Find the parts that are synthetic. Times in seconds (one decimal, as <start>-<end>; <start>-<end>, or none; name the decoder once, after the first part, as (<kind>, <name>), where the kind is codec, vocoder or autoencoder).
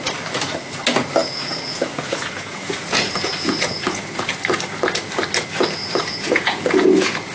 1.2-4.3 (vocoder, Vocos); 6.0-7.3